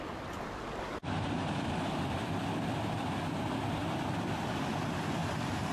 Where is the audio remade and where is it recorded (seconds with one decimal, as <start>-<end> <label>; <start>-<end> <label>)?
0.0-0.9 recorded; 0.9-2.0 remade; 2.0-5.2 recorded; 5.2-5.7 remade